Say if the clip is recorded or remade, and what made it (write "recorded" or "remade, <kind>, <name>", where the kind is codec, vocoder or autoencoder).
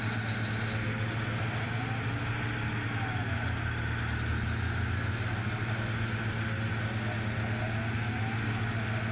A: recorded